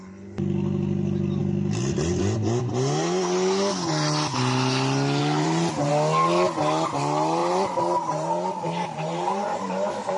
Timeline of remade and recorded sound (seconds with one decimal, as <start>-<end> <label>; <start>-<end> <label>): 0.0-5.2 recorded; 5.2-5.9 remade; 5.9-7.4 recorded; 7.4-9.7 remade; 9.7-10.2 recorded